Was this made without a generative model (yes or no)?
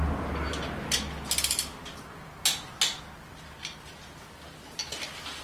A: yes